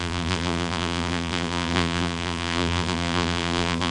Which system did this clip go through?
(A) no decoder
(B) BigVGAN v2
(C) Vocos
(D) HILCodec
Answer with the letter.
B